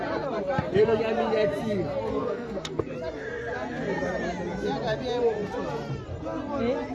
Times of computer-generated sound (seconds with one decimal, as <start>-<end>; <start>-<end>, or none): 2.2-2.8